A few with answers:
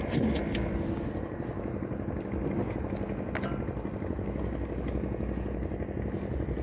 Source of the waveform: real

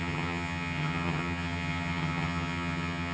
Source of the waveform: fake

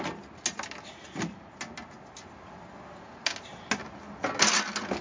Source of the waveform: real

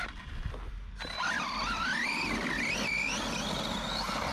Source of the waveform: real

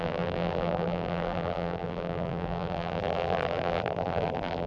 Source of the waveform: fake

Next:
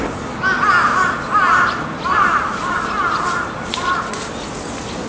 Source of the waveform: real